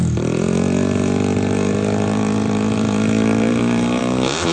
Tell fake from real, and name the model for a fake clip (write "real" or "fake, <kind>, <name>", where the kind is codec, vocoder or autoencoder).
fake, vocoder, BigVGAN v2